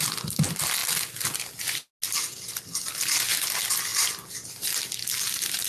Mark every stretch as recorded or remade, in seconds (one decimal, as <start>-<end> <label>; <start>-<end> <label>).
0.0-5.7 recorded